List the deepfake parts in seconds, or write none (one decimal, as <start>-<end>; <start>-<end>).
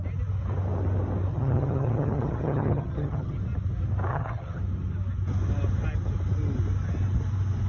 1.3-3.4; 4.1-4.6